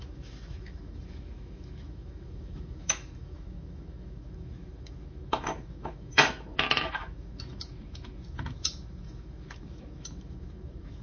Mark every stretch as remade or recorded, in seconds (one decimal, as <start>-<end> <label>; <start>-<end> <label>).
0.0-11.0 remade